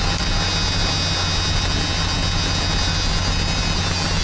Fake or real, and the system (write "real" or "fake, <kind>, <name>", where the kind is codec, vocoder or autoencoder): real